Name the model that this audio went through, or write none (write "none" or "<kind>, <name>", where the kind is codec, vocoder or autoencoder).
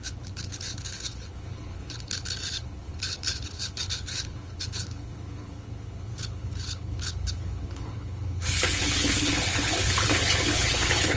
codec, HILCodec